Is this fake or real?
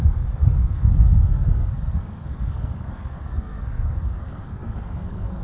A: fake